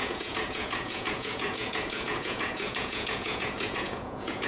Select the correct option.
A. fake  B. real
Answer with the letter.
A